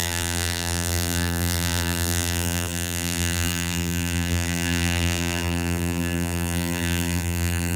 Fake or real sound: fake